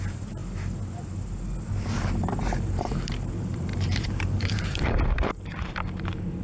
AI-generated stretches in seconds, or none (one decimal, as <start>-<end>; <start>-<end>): 0.0-0.4; 2.4-6.4